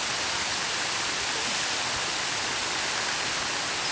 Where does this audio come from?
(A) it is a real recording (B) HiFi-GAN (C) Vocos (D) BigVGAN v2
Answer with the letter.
A